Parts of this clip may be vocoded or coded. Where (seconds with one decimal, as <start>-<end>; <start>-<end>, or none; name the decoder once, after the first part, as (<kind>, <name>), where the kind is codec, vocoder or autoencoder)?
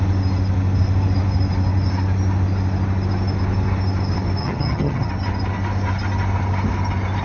4.4-5.1 (vocoder, HiFi-GAN)